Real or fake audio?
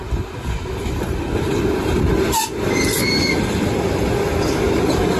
real